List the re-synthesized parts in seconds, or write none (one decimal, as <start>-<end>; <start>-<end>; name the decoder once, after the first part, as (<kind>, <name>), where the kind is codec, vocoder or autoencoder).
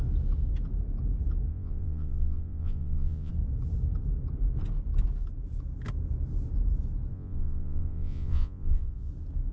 1.5-3.3 (vocoder, Vocos); 7.1-9.1